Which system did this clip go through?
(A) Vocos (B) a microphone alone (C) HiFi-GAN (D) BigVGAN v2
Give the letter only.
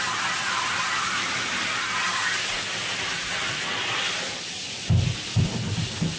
B